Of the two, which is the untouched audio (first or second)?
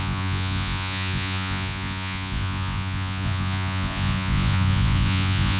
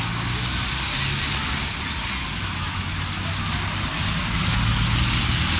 second